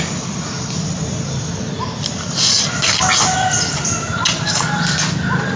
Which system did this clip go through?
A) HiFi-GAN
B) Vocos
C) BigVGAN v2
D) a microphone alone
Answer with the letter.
D